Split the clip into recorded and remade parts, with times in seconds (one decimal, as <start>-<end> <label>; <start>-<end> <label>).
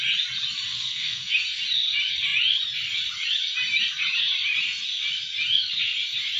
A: 0.0-0.7 recorded; 0.7-1.3 remade; 1.3-6.4 recorded